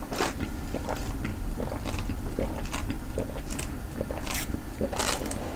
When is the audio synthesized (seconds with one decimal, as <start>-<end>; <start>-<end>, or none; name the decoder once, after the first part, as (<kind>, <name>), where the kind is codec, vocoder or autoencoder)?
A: none